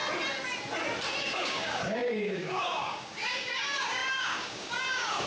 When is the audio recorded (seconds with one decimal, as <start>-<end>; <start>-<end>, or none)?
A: 0.0-1.2